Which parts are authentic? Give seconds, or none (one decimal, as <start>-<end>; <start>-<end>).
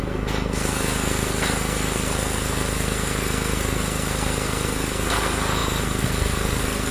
none